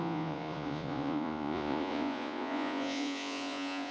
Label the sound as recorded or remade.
remade